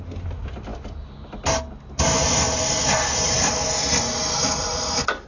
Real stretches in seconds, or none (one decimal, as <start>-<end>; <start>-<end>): 0.0-5.3